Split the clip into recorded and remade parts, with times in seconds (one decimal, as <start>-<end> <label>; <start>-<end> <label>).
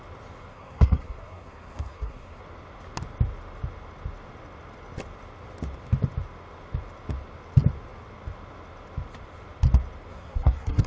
0.0-0.5 recorded; 0.5-2.4 remade; 2.4-10.1 recorded; 10.1-10.9 remade